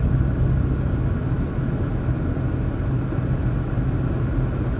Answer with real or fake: real